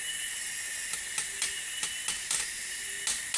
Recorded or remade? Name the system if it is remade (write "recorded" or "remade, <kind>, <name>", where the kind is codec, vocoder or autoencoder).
recorded